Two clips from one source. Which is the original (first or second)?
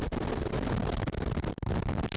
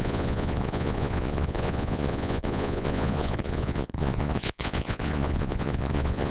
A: first